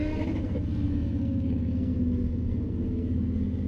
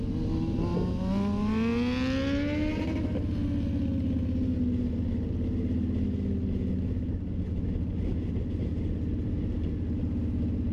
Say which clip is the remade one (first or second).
first